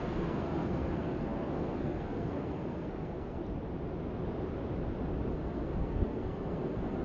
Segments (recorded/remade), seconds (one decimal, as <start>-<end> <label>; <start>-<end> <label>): 0.0-3.4 remade; 3.4-5.3 recorded; 5.3-7.0 remade